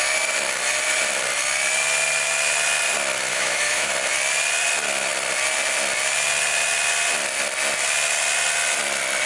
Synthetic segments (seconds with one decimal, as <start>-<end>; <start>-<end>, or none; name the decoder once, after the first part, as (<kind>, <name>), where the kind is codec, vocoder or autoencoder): 3.3-3.9 (autoencoder, DAC-VAE)